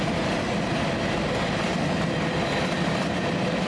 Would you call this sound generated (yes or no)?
yes